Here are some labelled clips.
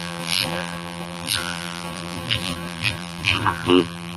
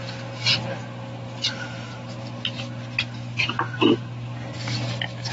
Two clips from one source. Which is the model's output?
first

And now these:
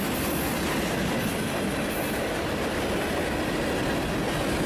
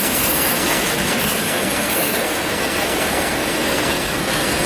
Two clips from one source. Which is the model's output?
second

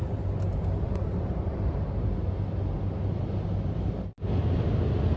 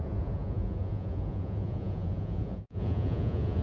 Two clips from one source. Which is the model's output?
second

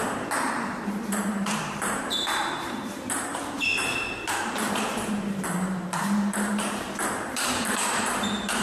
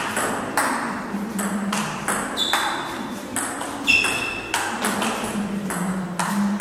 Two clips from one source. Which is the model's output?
first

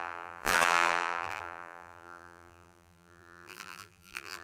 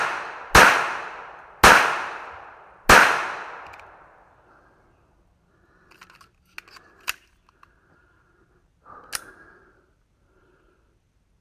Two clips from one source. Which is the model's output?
first